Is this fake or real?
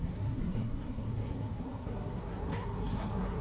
fake